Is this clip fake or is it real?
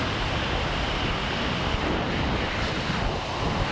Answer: real